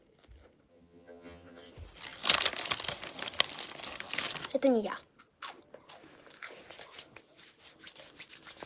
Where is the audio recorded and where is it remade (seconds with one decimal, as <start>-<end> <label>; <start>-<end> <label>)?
0.0-0.7 recorded; 0.7-1.7 remade; 1.7-8.7 recorded

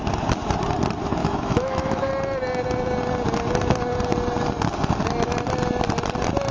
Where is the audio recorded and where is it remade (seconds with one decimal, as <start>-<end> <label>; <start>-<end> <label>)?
0.0-1.2 recorded; 1.2-2.1 remade; 2.1-6.5 recorded